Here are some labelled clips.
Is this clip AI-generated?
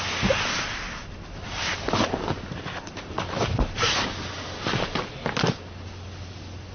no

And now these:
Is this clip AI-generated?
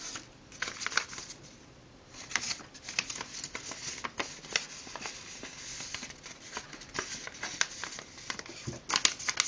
no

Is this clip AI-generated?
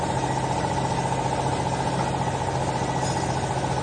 no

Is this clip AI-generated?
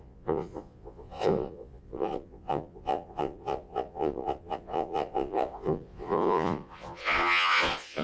yes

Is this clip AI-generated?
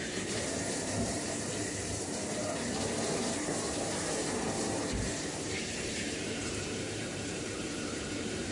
yes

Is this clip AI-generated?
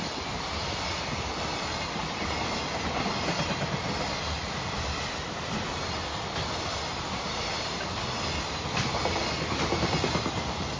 no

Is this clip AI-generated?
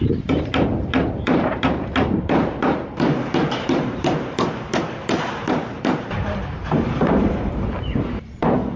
yes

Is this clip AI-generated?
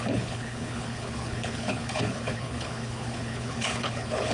yes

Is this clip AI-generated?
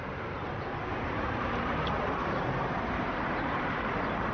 yes